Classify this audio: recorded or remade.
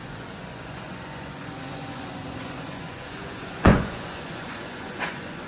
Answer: remade